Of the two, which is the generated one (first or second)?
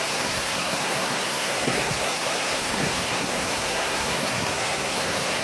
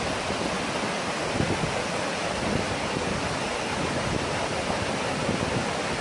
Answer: first